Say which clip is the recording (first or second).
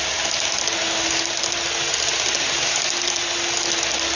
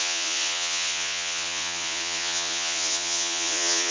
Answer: first